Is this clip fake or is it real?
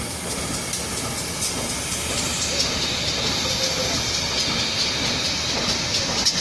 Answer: real